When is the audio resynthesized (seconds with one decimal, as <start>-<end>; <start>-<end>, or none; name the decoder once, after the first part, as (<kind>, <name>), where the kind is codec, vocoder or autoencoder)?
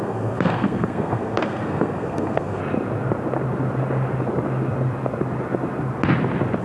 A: 0.0-2.6 (codec, SNAC)